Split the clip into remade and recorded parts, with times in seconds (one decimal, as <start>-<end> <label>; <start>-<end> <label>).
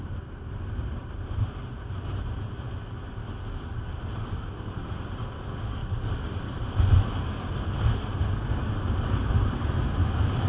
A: 0.0-3.2 remade; 3.2-4.0 recorded; 4.0-5.8 remade; 5.8-9.0 recorded; 9.0-10.5 remade